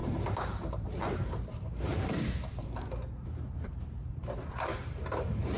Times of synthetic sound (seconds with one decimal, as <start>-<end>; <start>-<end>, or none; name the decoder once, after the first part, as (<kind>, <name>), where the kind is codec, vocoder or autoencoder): 0.0-5.6 (vocoder, BigVGAN v2)